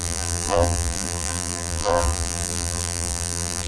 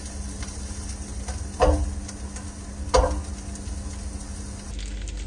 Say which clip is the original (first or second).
second